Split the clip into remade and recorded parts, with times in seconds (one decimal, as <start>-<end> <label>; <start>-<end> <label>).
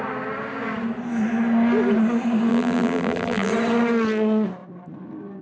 0.0-2.5 recorded; 2.5-3.5 remade; 3.5-5.4 recorded